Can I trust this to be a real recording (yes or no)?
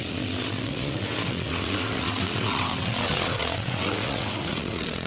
no